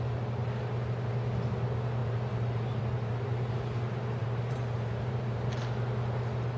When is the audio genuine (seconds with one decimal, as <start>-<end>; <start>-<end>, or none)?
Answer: 0.0-2.0; 3.5-4.2; 5.4-6.6